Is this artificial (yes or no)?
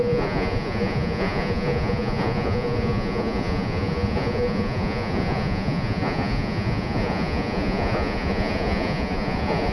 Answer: yes